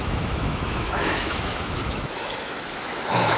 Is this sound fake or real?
fake